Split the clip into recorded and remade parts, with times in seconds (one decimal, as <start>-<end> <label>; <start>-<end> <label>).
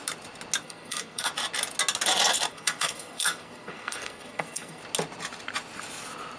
0.0-0.6 recorded; 0.6-1.3 remade; 1.3-2.5 recorded; 2.5-4.8 remade; 4.8-6.4 recorded